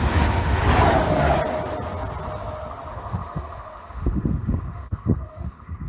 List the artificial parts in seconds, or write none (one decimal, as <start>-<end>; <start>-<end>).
0.0-0.6; 2.9-5.9